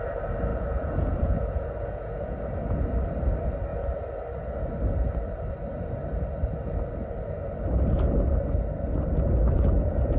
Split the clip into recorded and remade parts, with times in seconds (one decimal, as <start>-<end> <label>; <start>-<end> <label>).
0.0-0.5 recorded; 0.5-2.8 remade; 2.8-10.2 recorded